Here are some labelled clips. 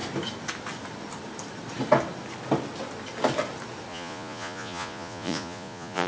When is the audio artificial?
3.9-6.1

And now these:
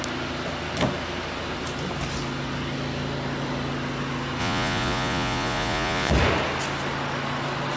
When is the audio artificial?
4.4-6.1

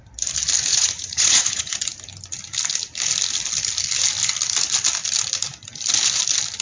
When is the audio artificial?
0.7-1.8

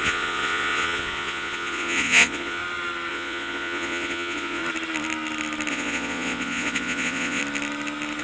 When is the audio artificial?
0.0-2.6; 3.1-4.6; 5.7-7.4

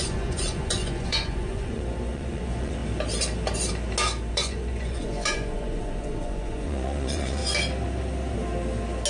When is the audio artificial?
0.0-2.8; 4.3-7.4

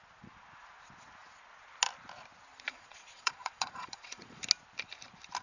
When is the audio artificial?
2.5-4.4